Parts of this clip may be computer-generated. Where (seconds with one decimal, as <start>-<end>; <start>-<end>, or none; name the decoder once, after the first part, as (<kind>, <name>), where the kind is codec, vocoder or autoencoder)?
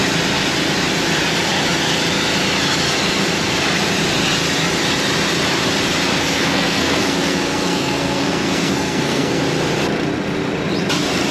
6.1-9.4 (codec, SNAC)